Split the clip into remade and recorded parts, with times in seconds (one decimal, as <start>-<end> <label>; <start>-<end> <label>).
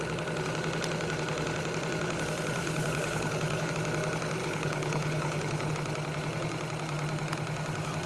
0.0-2.6 recorded; 2.6-3.7 remade; 3.7-4.4 recorded; 4.4-5.7 remade; 5.7-8.1 recorded